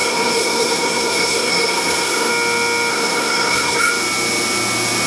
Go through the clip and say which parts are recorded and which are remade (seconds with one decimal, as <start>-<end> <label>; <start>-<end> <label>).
0.0-2.3 remade; 2.3-2.9 recorded; 2.9-3.9 remade; 3.9-5.1 recorded